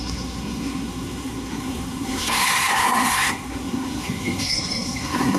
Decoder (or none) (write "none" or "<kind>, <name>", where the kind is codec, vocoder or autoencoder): codec, SNAC